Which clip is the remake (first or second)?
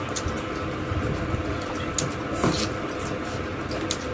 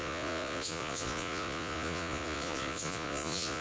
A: second